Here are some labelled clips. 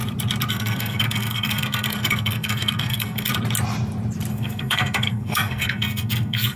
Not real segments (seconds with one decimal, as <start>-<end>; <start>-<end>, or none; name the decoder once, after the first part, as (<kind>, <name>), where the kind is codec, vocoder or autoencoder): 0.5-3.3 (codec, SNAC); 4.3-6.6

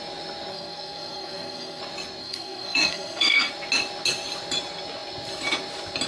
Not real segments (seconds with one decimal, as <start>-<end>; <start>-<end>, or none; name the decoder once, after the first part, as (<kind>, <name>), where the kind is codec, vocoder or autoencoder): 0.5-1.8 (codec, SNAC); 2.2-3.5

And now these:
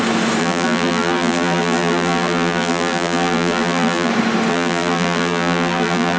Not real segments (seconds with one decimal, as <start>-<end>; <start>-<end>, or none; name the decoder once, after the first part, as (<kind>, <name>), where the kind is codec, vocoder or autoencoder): 0.4-4.1 (vocoder, BigVGAN v2); 4.5-6.2

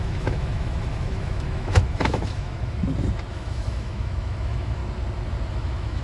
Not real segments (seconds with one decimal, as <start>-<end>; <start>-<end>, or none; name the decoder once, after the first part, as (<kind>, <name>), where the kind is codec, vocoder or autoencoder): 0.0-2.8 (autoencoder, DAC-VAE); 3.3-4.8; 5.5-6.0